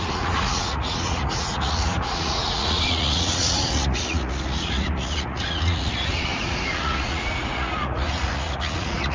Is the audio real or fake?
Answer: fake